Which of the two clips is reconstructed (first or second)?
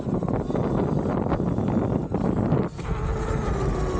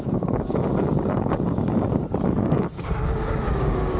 second